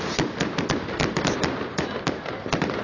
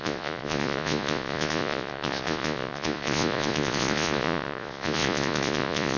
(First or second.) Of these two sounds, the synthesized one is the second